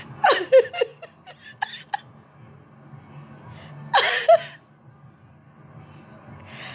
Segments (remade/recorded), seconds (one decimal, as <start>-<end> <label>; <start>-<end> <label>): 0.0-6.7 recorded